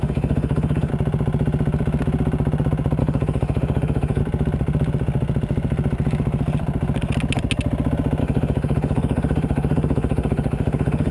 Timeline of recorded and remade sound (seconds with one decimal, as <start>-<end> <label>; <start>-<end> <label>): 0.0-0.9 remade; 0.9-3.0 recorded; 3.0-4.2 remade; 4.2-8.2 recorded; 8.2-11.1 remade